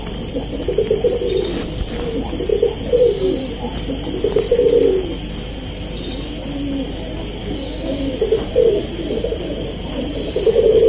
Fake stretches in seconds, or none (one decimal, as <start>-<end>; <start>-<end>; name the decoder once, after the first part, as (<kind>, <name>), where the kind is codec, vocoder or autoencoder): 7.4-8.1 (codec, DAC)